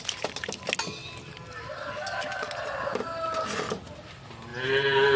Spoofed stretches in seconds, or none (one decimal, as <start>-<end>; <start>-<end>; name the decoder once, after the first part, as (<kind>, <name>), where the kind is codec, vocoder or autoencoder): none